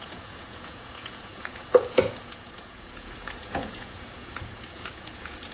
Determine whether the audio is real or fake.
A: fake